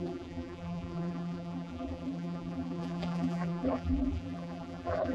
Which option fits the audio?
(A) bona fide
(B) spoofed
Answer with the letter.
B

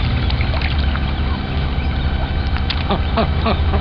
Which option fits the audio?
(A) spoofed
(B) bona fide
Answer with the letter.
B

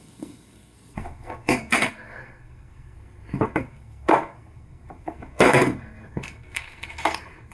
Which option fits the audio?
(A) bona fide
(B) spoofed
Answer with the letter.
B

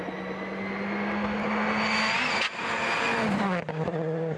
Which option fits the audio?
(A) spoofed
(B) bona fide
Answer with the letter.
B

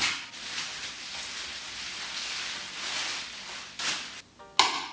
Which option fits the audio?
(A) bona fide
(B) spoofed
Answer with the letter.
A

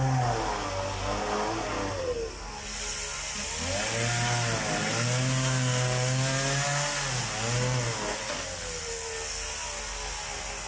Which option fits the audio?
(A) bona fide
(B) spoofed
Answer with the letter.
A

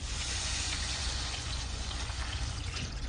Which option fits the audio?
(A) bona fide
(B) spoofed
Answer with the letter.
B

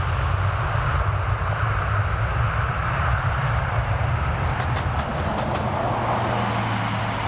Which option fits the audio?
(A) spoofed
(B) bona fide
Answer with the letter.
B